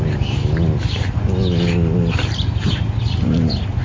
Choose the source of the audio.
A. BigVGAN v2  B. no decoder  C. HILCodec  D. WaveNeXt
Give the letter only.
B